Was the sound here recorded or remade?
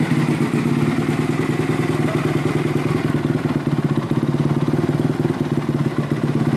recorded